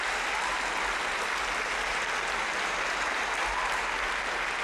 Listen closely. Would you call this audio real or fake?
real